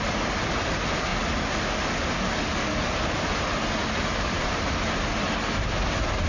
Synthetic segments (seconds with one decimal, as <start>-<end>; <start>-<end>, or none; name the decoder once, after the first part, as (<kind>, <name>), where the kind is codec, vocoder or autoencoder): none